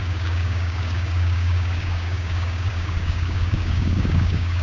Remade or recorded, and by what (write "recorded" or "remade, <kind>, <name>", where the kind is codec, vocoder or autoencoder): remade, codec, DAC